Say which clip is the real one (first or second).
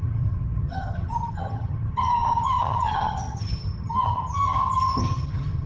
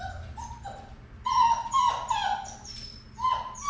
second